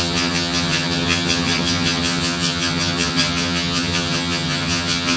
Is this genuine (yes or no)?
no